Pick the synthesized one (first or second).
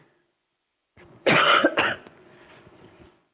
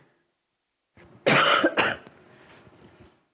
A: first